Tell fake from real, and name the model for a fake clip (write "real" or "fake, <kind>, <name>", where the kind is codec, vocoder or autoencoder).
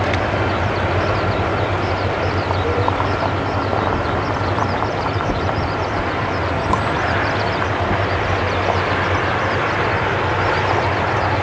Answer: real